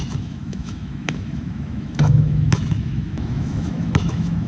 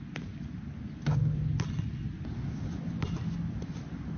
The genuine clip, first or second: second